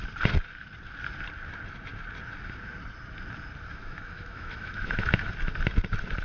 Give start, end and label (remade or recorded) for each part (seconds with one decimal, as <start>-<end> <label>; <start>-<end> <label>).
0.0-3.7 recorded; 3.7-5.3 remade; 5.3-6.2 recorded

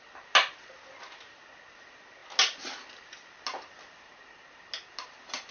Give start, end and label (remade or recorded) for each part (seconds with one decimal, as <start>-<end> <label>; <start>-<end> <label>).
0.0-5.5 recorded

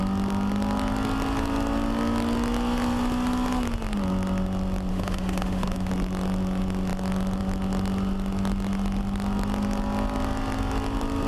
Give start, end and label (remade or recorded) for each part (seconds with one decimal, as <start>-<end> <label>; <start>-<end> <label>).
0.0-4.9 recorded; 4.9-5.9 remade; 5.9-11.3 recorded

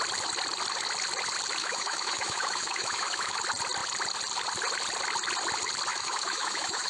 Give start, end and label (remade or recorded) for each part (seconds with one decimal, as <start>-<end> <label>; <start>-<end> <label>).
0.0-1.6 recorded; 1.6-3.4 remade; 3.4-5.9 recorded; 5.9-6.9 remade